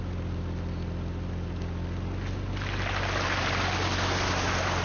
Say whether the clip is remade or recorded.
recorded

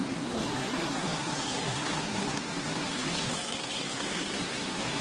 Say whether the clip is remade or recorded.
remade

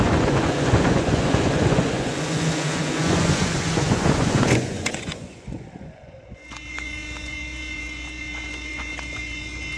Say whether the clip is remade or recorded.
remade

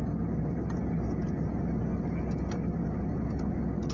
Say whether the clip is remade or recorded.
recorded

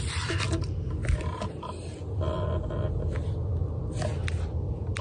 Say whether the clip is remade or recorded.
recorded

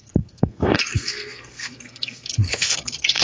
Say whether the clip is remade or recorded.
remade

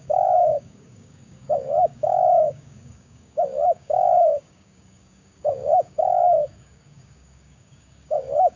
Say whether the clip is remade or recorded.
remade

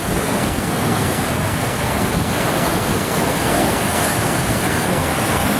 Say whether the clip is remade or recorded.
remade